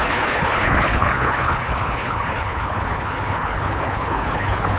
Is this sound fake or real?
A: fake